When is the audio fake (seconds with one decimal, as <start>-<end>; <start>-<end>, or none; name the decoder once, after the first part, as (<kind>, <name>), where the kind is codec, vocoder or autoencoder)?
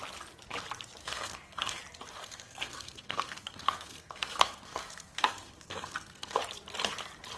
1.0-1.8 (codec, SNAC); 2.2-6.4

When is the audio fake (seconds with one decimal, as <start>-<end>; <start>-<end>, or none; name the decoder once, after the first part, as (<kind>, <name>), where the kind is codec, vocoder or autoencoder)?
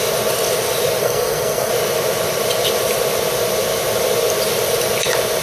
1.0-1.7 (codec, SNAC)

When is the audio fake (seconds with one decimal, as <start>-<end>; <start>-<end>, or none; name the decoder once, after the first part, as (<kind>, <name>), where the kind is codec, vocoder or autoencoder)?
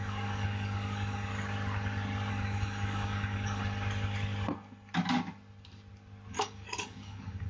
0.0-1.3 (codec, DAC); 2.3-3.6; 6.3-7.5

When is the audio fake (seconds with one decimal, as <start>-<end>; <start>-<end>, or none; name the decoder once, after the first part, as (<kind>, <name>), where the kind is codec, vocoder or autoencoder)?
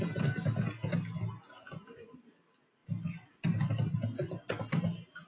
none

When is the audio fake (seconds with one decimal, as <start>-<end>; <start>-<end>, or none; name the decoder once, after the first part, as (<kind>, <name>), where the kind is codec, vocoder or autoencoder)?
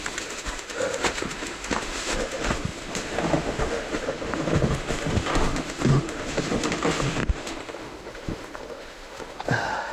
0.0-9.9 (autoencoder, DAC-VAE)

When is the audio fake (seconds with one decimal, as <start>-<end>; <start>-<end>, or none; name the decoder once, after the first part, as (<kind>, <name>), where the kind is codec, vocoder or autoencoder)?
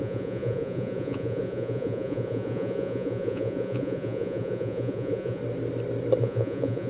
0.0-5.4 (vocoder, Vocos); 6.2-6.9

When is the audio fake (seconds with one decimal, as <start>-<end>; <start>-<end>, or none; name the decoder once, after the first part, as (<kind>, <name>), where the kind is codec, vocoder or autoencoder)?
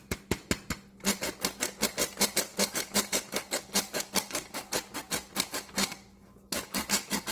2.5-4.8 (codec, DAC); 5.5-7.3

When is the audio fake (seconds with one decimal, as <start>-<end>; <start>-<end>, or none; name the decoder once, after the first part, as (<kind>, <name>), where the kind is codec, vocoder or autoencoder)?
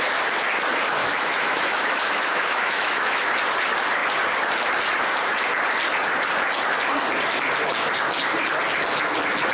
1.0-3.2 (autoencoder, DAC-VAE)